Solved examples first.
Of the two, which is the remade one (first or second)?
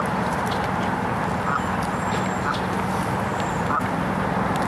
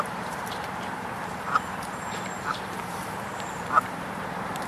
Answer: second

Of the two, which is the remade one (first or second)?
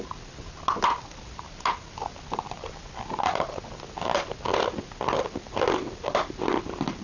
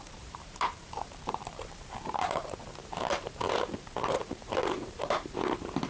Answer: second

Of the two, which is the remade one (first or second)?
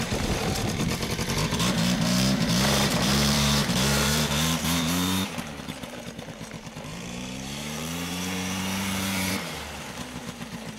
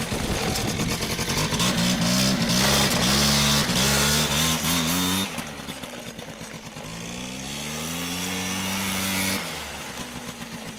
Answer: first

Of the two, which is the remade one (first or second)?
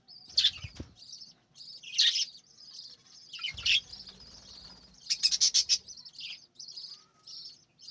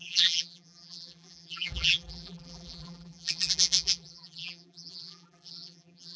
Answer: second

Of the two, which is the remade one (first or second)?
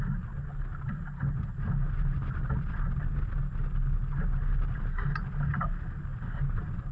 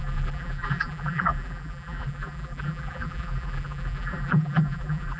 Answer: second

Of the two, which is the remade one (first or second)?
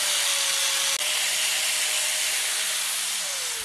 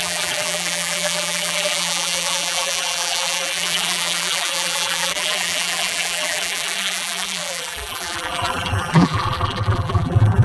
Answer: second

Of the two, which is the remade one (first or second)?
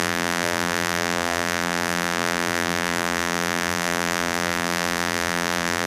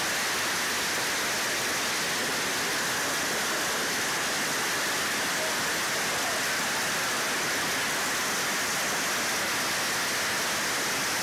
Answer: first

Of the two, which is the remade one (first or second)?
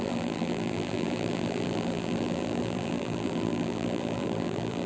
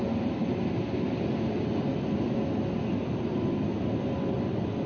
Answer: first